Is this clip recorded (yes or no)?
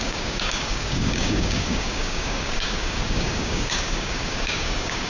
no